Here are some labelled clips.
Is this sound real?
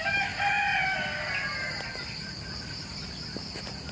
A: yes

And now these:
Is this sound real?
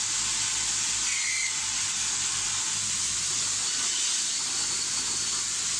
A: yes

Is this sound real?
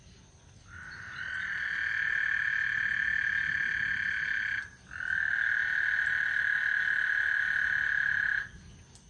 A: yes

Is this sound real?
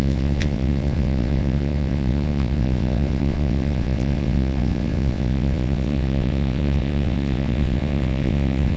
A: no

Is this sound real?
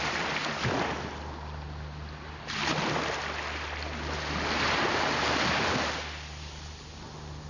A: yes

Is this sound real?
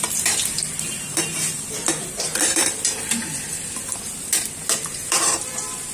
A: no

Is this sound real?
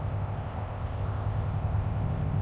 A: no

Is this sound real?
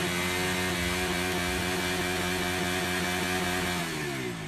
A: yes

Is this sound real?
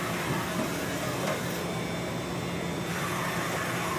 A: yes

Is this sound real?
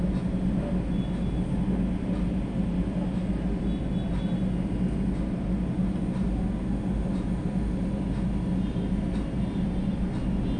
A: yes